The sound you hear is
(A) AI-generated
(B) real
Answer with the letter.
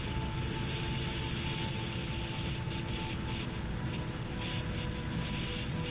B